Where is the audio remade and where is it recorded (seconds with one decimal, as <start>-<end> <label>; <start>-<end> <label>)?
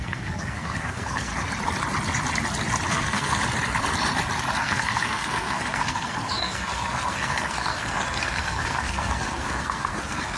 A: 0.0-1.3 remade; 1.3-2.9 recorded; 2.9-3.4 remade; 3.4-4.6 recorded; 4.6-10.4 remade